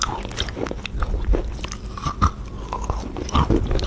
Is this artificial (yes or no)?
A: no